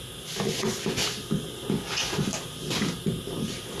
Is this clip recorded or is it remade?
recorded